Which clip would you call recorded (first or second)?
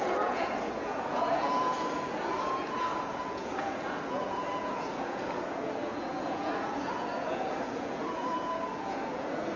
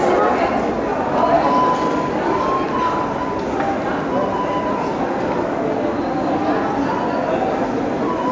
second